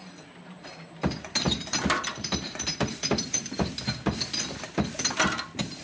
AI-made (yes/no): yes